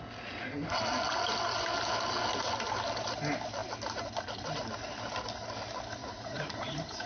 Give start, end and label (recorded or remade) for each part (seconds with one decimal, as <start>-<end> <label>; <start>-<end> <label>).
0.0-6.0 recorded; 6.0-7.1 remade